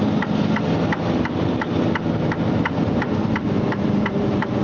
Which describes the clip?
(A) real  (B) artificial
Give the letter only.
B